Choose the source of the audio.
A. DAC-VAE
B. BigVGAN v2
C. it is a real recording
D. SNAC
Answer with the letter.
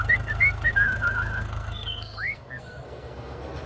D